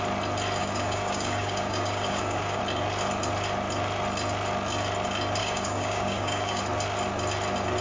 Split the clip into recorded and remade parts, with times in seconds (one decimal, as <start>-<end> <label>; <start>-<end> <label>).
0.0-0.6 recorded; 0.6-2.6 remade; 2.6-5.4 recorded; 5.4-6.6 remade; 6.6-7.8 recorded